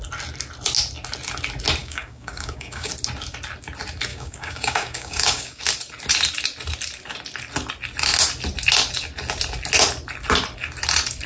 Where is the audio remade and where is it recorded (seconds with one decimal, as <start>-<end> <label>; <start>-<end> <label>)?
0.0-1.8 recorded; 1.8-2.9 remade; 2.9-4.1 recorded; 4.1-5.6 remade; 5.6-11.3 recorded